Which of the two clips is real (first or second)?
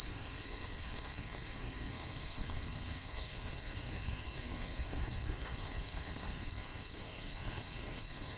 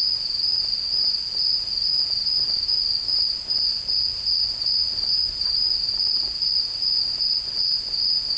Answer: second